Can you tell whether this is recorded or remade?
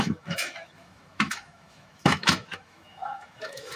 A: remade